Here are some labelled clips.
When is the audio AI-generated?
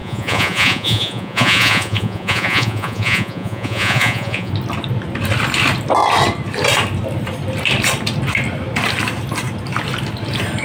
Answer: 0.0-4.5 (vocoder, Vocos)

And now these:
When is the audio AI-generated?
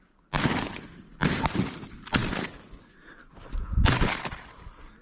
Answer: none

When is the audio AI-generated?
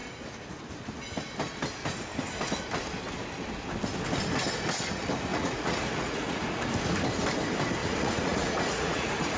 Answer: 5.3-6.6 (vocoder, Vocos); 7.8-9.4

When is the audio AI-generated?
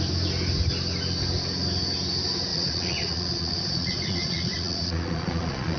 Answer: 2.5-5.8 (vocoder, Vocos)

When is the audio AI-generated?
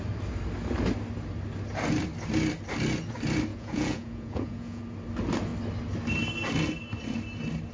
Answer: 3.5-4.8 (vocoder, Vocos)